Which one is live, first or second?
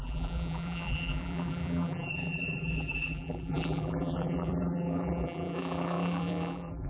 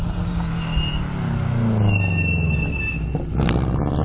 second